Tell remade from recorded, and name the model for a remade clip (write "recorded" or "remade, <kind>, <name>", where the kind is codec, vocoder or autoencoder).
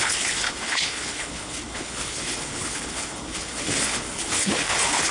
remade, codec, HILCodec